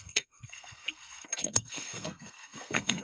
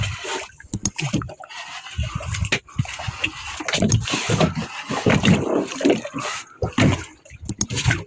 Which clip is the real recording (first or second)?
second